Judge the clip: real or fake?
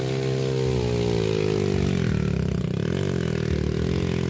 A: real